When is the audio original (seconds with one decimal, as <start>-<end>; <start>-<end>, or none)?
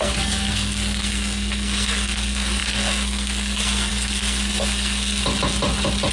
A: 5.2-6.1